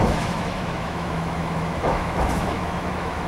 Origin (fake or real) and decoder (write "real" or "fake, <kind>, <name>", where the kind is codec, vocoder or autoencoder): fake, autoencoder, DAC-VAE